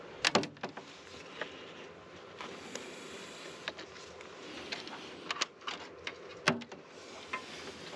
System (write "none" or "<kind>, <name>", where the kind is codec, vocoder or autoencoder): none